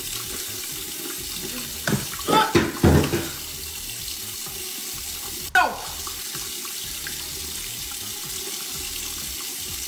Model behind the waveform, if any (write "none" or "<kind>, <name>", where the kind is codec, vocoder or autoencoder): none